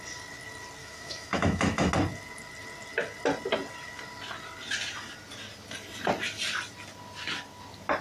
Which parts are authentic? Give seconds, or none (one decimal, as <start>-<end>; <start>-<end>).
0.0-0.8; 1.9-8.0